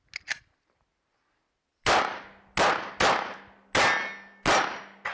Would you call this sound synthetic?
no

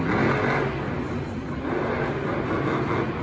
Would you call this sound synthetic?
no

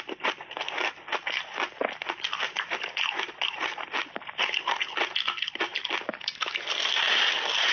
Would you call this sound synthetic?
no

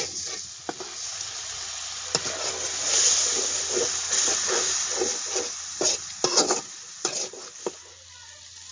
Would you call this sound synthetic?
no